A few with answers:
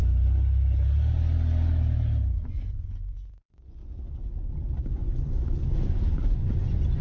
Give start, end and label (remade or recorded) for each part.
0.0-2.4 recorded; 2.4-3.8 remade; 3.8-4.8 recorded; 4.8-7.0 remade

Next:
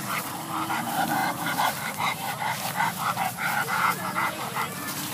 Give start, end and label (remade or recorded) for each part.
0.0-3.7 recorded; 3.7-4.4 remade; 4.4-5.1 recorded

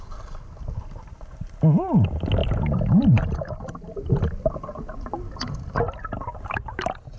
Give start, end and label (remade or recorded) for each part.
0.0-7.2 recorded